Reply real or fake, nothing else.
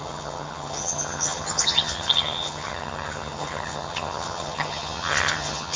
fake